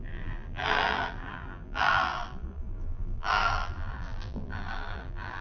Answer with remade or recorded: remade